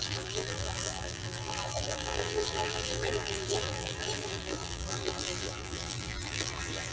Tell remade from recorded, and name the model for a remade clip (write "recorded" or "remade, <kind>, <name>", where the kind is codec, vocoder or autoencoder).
remade, vocoder, BigVGAN v2